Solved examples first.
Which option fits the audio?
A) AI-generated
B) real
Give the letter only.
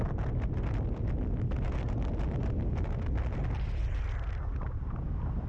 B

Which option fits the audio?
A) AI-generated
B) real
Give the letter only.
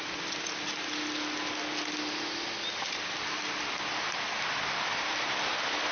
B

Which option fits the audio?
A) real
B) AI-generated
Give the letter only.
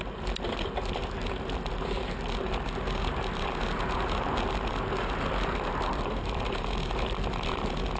A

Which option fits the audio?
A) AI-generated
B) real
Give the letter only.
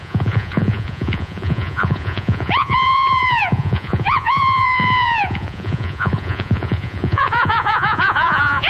A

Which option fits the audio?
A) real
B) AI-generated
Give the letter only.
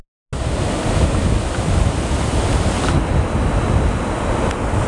A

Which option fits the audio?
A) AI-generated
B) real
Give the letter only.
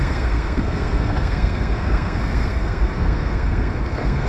A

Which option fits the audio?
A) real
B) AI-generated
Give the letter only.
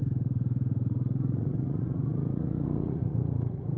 B